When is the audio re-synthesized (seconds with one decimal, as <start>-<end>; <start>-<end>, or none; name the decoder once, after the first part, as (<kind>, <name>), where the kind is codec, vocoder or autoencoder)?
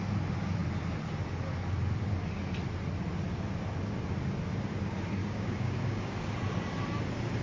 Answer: 5.2-6.3 (codec, DAC)